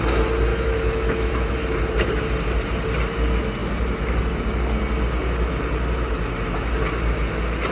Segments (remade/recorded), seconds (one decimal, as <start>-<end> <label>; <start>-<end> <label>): 0.0-0.5 recorded; 0.5-1.5 remade; 1.5-7.7 recorded